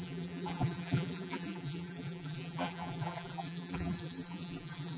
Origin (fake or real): fake